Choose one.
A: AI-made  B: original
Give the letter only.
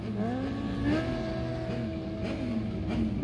B